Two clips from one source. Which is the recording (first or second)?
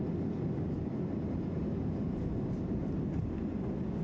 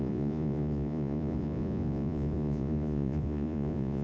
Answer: first